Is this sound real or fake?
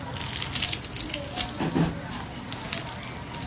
real